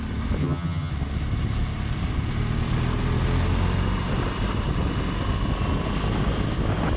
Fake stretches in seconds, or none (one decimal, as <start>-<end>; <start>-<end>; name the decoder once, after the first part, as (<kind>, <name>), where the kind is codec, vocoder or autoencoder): 0.4-0.9 (vocoder, HiFi-GAN)